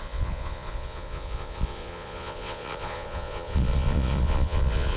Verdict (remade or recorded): remade